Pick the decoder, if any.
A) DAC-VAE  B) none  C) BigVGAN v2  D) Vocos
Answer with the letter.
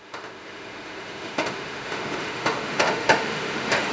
A